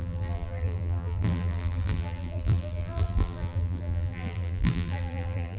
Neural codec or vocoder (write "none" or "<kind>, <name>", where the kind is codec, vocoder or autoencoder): vocoder, BigVGAN v2